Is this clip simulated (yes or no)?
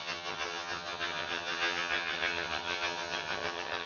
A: yes